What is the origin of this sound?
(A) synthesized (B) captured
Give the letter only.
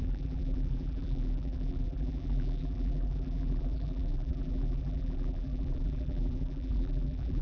A